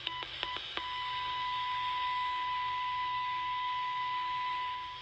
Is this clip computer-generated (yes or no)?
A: yes